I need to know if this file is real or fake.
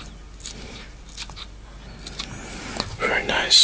real